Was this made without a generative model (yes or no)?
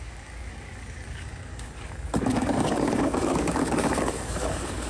no